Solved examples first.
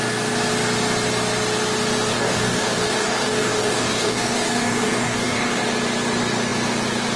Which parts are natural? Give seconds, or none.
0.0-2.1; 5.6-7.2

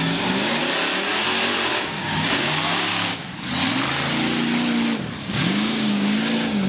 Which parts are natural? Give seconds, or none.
0.6-2.0; 3.2-5.2

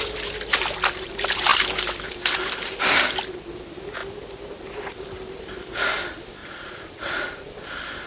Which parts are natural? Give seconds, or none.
0.0-6.4; 7.5-8.1

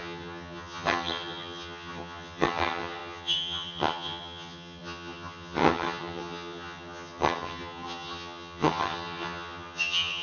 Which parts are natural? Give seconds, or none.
none

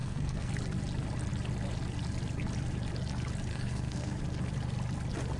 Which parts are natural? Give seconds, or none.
0.5-3.5; 4.2-5.4

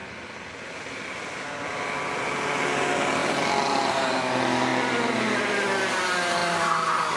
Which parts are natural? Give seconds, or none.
1.0-3.2; 4.1-4.7; 5.2-7.2